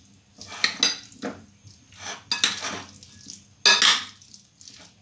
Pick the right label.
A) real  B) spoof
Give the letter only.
A